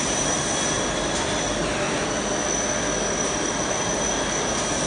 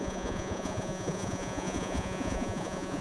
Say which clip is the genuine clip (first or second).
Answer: first